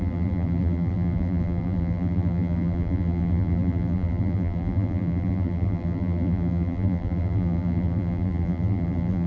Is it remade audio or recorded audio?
remade